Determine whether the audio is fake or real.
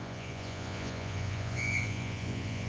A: fake